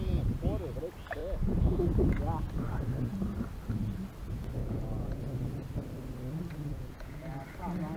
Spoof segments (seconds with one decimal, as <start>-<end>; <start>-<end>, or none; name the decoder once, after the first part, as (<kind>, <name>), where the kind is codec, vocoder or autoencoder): 1.2-1.8 (vocoder, Vocos); 4.6-5.2; 6.7-7.4